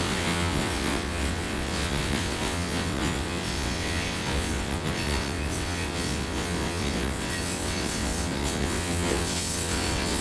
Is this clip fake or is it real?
fake